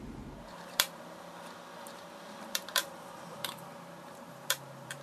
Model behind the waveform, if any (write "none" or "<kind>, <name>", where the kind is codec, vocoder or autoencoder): vocoder, BigVGAN v2